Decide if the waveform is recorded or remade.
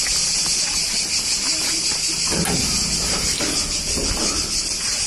recorded